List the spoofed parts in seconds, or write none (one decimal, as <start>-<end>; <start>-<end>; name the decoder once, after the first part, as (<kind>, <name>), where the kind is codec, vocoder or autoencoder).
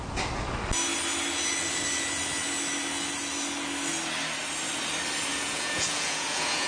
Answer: 5.3-6.7 (vocoder, Vocos)